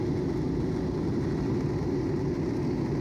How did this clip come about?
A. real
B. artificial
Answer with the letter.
A